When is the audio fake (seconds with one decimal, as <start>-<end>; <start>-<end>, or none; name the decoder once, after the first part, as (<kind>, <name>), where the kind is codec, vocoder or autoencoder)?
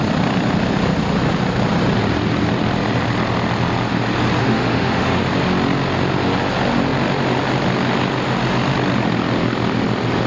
4.4-5.2 (autoencoder, DAC-VAE)